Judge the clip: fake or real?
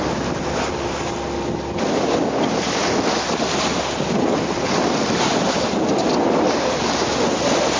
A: real